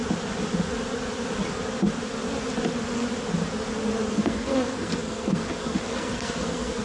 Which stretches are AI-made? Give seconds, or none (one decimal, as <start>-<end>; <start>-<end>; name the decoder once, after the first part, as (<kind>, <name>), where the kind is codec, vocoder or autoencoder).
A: 4.1-6.8 (codec, SNAC)